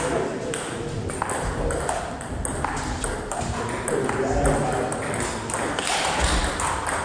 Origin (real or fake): real